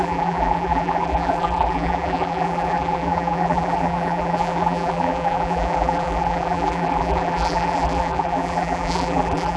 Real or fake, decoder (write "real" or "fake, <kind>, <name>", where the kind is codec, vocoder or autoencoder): fake, vocoder, BigVGAN v2